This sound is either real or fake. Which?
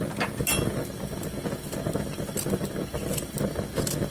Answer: real